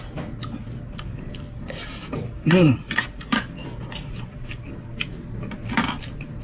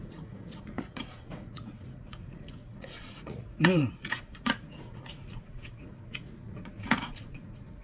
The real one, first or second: first